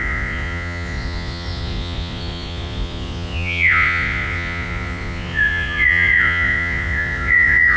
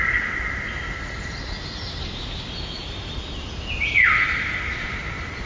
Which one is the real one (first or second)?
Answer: second